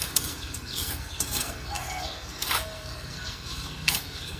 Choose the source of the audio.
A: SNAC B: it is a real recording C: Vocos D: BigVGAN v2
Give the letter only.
A